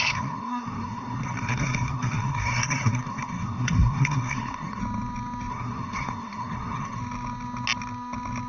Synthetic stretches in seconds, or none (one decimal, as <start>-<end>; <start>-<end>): 0.0-4.8; 5.5-7.0